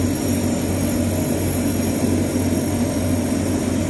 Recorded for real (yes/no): yes